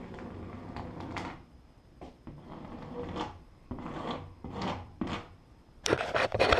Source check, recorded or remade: remade